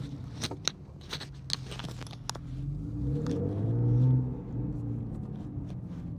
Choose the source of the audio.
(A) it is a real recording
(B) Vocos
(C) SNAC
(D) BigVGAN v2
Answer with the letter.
A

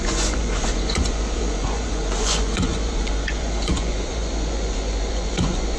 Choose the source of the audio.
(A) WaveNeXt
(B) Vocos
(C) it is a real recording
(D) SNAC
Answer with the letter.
B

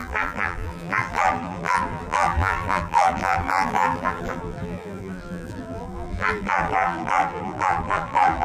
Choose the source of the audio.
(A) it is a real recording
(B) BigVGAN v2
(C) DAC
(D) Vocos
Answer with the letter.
B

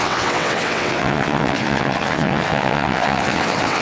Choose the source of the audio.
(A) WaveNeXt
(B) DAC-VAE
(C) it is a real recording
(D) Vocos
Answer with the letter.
A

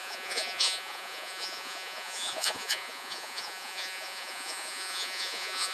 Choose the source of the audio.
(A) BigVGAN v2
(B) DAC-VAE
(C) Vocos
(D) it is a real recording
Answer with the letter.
C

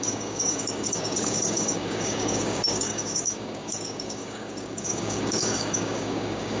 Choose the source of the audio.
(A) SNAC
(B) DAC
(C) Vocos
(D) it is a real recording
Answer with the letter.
B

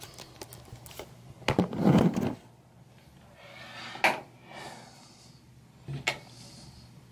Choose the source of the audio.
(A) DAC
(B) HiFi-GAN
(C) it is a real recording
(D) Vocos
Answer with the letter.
C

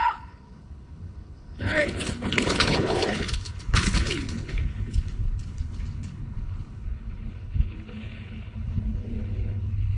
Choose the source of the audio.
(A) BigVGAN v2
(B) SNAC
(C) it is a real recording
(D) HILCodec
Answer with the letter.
D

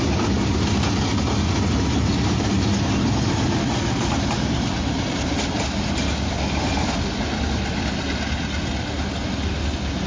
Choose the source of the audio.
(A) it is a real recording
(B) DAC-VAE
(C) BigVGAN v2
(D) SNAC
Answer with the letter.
A